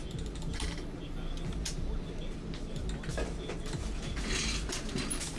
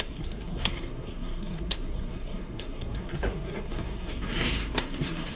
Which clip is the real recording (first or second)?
first